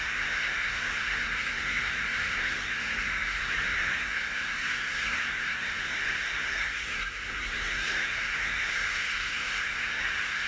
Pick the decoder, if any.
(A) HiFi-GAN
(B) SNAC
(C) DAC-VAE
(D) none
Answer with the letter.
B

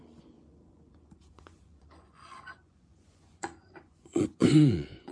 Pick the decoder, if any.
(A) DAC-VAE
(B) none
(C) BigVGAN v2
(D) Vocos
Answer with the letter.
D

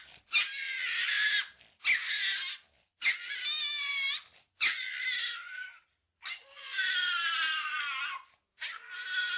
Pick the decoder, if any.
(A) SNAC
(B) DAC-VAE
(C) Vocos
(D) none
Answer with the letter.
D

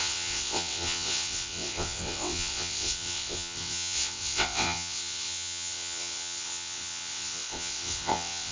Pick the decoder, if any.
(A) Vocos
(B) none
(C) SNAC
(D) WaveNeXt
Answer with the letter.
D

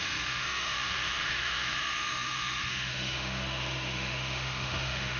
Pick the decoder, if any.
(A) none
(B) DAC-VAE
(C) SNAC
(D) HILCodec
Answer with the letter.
B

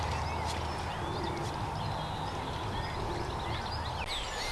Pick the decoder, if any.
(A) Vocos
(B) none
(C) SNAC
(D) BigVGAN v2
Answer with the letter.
B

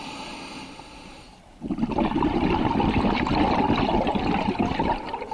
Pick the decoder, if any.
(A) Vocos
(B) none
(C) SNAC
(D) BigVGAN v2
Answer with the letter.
D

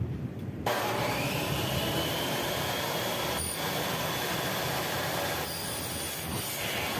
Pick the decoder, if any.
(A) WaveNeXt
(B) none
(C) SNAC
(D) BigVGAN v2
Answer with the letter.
D